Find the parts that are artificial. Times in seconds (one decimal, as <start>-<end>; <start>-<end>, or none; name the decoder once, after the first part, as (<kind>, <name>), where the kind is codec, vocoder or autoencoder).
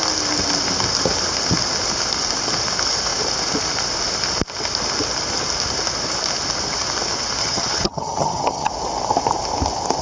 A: 7.4-8.7 (vocoder, HiFi-GAN)